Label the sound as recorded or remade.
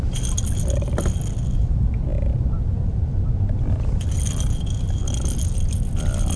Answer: recorded